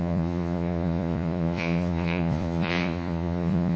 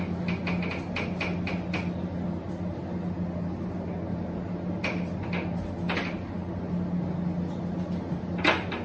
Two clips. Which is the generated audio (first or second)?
first